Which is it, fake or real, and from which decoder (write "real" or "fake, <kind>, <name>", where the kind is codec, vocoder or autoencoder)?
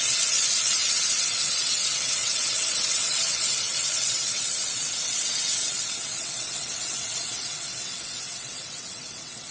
fake, vocoder, WaveNeXt